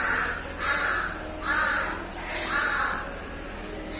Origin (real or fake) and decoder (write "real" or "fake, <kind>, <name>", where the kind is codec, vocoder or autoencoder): real